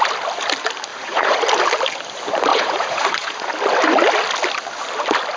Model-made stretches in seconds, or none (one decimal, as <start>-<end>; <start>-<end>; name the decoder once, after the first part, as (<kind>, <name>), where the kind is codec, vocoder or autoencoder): 0.9-1.5 (vocoder, Vocos); 2.5-3.5